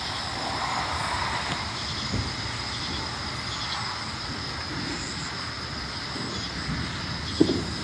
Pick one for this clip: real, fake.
real